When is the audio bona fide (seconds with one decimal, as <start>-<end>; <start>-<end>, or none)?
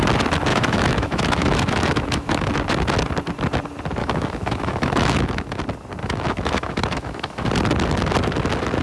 0.0-0.5; 2.5-4.0; 5.6-6.0; 7.5-8.8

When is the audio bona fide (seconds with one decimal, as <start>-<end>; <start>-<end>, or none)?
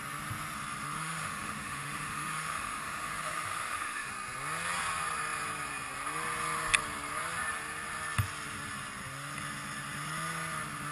0.0-1.0; 4.1-10.9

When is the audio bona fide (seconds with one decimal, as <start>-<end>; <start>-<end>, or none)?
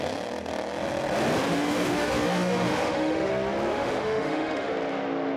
0.0-1.4; 3.3-3.7; 4.7-5.4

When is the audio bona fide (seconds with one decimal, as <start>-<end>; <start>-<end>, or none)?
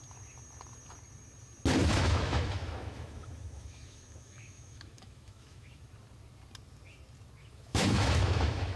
0.0-1.8; 5.8-7.4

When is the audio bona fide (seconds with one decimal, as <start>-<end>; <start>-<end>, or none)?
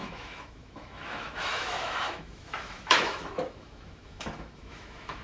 none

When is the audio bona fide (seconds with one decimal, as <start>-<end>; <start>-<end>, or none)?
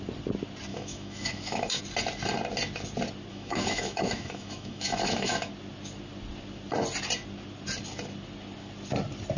0.0-0.7; 1.8-3.3; 5.5-9.4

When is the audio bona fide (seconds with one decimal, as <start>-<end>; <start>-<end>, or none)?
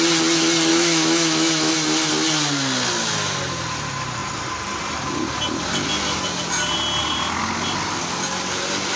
0.0-0.7; 1.7-9.0